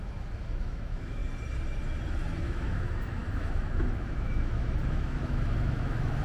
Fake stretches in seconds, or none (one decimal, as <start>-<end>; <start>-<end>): 0.0-1.2; 2.4-6.2